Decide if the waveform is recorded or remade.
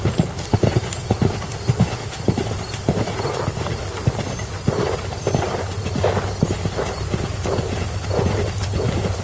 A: recorded